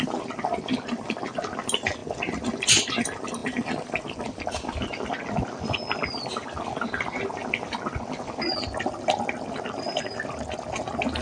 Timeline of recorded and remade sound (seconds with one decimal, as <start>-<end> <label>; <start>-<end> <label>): 0.0-11.2 recorded